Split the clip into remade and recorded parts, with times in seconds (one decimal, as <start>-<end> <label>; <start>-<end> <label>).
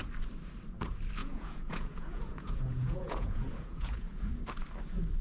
0.0-1.2 recorded; 1.2-4.3 remade; 4.3-5.2 recorded